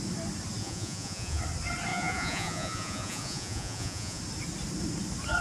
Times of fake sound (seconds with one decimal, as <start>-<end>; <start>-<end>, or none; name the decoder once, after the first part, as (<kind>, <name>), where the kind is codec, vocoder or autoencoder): 0.6-1.4 (vocoder, Vocos); 1.9-4.2